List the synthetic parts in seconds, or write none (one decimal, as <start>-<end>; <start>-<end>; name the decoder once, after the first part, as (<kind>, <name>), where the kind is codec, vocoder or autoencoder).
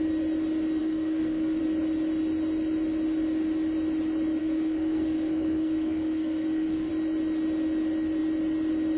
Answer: 0.8-1.6 (codec, SNAC); 4.4-6.9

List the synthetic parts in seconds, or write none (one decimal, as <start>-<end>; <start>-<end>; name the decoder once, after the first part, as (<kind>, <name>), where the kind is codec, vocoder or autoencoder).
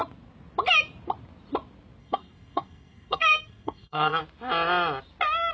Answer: 2.0-4.2 (codec, SNAC)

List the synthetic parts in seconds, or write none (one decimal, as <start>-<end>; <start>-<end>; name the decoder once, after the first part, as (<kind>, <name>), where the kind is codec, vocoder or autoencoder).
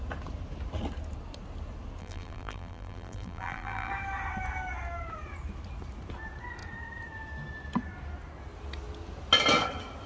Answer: 2.0-3.9 (vocoder, BigVGAN v2)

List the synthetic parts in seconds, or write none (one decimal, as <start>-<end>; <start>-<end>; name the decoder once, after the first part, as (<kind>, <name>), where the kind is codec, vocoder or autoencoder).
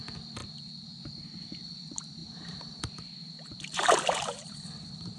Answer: 0.4-1.0 (vocoder, BigVGAN v2); 2.2-5.2